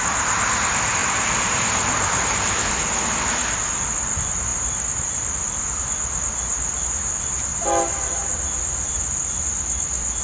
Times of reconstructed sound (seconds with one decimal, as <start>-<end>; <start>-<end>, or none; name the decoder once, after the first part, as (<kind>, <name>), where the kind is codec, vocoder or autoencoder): 1.0-2.7 (vocoder, BigVGAN v2); 7.5-9.0